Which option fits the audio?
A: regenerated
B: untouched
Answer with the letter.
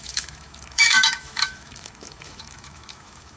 A